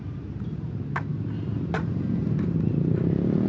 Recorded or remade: recorded